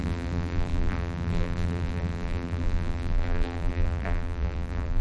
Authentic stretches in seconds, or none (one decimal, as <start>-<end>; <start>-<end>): none